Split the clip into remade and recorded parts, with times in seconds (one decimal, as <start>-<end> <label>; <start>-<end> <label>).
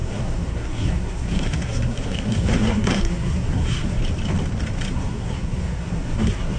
0.0-4.0 remade; 4.0-4.9 recorded; 4.9-6.6 remade